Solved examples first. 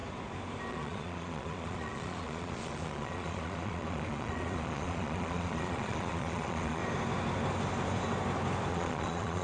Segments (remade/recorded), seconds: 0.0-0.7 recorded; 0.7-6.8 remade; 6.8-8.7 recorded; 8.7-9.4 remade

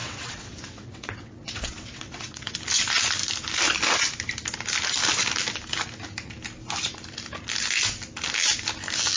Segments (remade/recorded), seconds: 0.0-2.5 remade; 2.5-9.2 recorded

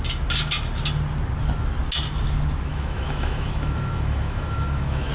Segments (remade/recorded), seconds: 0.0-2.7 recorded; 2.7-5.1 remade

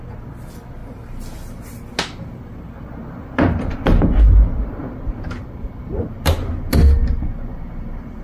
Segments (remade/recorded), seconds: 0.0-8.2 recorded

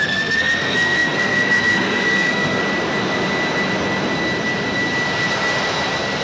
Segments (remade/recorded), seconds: 0.0-2.6 remade; 2.6-6.2 recorded

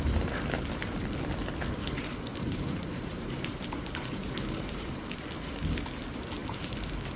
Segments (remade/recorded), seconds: 0.0-2.3 recorded; 2.3-5.1 remade; 5.1-7.2 recorded

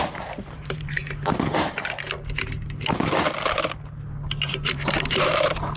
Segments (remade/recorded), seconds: 0.0-1.0 remade; 1.0-4.5 recorded; 4.5-5.8 remade